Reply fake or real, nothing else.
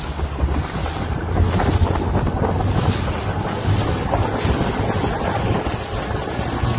real